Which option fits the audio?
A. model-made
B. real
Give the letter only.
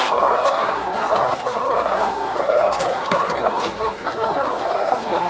A